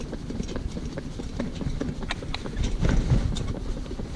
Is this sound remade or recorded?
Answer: recorded